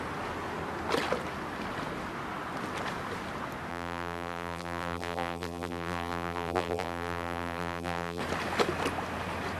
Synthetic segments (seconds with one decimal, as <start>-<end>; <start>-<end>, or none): 3.7-8.2